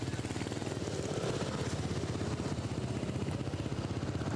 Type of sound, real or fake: real